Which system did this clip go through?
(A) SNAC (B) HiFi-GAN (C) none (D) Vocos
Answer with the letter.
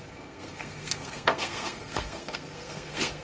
A